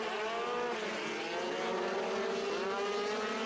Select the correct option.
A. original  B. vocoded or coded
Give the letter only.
A